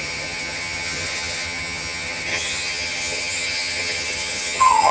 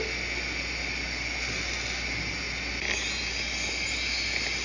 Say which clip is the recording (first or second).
second